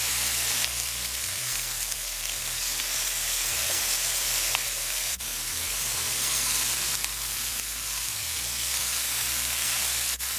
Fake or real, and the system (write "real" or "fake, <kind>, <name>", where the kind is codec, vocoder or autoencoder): fake, codec, SNAC